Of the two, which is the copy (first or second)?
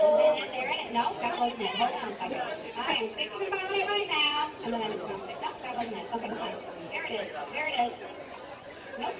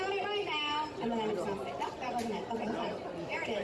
first